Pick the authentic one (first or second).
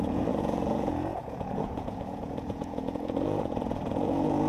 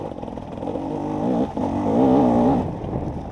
second